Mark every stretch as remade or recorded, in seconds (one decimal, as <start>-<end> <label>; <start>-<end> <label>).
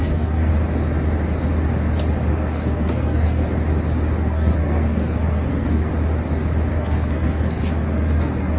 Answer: 0.0-0.5 remade; 0.5-2.3 recorded; 2.3-3.4 remade; 3.4-4.2 recorded; 4.2-5.9 remade; 5.9-6.7 recorded; 6.7-8.6 remade